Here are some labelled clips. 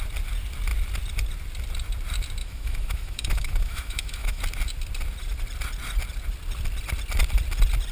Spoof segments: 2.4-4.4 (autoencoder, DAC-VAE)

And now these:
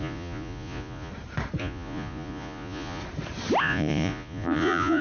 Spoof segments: 0.0-1.1 (vocoder, Vocos); 1.6-3.0; 3.6-5.0

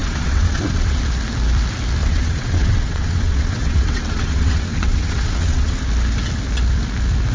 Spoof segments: 0.0-1.0 (vocoder, WaveNeXt); 2.0-5.8